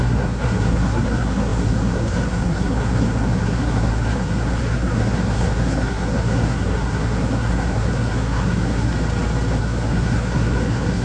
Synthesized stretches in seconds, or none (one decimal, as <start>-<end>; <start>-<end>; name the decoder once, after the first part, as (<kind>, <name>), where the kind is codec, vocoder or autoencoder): 0.0-8.9 (codec, SNAC); 9.6-11.0